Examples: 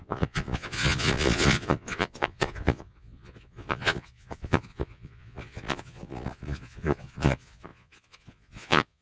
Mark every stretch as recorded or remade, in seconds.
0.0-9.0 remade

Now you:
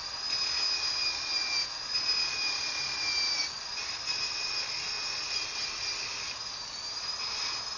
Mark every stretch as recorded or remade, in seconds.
0.0-7.8 recorded

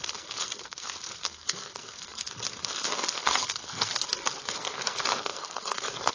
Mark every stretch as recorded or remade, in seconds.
0.0-6.1 remade